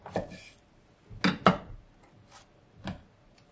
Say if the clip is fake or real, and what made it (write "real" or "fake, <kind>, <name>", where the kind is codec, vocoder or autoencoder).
real